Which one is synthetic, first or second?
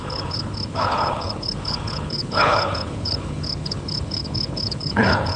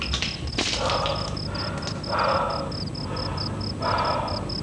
first